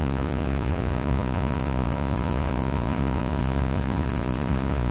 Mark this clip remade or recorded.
remade